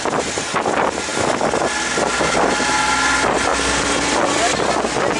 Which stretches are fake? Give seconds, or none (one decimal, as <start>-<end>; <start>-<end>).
none